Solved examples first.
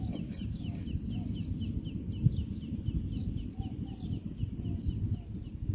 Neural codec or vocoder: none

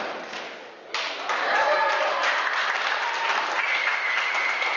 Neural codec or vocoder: none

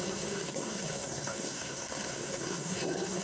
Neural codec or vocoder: codec, SNAC